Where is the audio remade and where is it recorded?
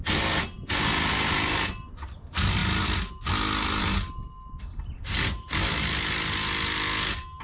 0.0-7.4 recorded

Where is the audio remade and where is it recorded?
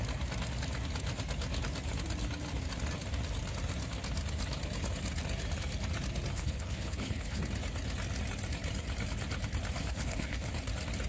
0.0-6.3 recorded; 6.3-7.4 remade; 7.4-9.8 recorded; 9.8-10.5 remade; 10.5-11.1 recorded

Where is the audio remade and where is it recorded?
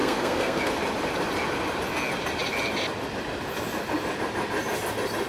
0.0-0.6 remade; 0.6-5.3 recorded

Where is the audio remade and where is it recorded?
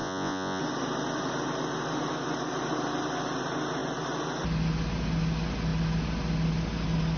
0.0-0.6 remade; 0.6-7.2 recorded